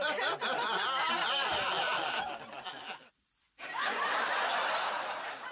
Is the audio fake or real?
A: fake